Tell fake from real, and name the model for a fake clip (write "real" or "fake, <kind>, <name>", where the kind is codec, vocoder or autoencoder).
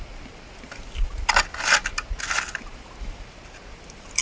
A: real